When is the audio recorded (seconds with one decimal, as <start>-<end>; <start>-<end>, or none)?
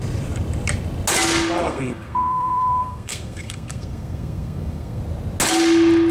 0.0-1.6; 5.0-6.1